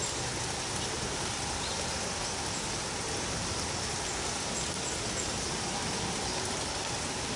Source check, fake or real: real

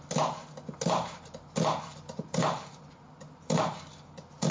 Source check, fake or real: real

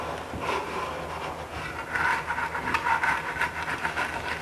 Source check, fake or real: real